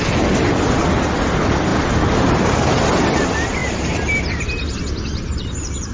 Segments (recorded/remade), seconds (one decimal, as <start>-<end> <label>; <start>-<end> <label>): 0.0-3.6 recorded; 3.6-4.4 remade; 4.4-5.9 recorded